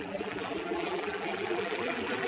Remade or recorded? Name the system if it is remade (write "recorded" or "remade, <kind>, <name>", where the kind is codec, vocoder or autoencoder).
remade, vocoder, BigVGAN v2